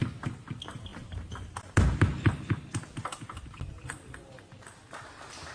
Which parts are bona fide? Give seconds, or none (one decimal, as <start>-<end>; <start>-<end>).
0.0-5.5